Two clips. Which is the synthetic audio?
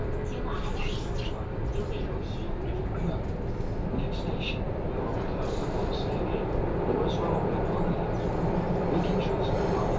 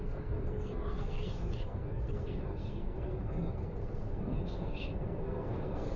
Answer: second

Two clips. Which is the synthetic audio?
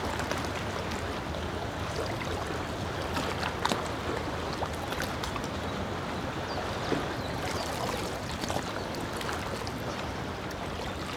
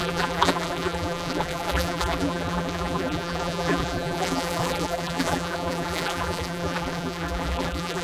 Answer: second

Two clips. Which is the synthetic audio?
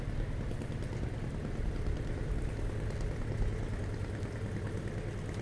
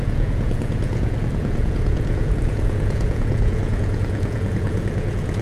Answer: second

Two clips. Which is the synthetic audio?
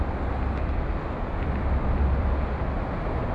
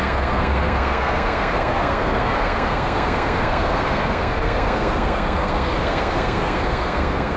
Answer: second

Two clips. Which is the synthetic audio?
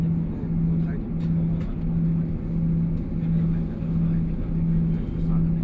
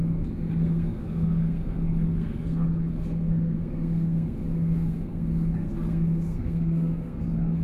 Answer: second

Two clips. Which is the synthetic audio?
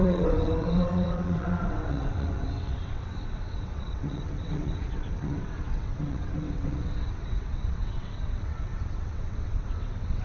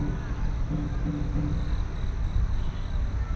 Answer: first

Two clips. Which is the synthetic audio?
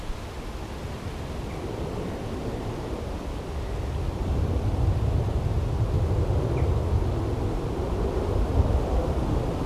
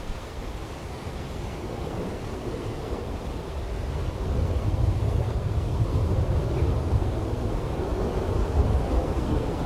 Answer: second